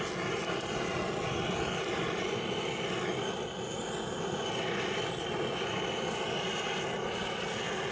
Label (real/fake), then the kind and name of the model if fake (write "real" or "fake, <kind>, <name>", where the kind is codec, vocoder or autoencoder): real